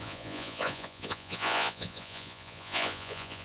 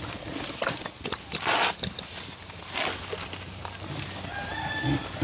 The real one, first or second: second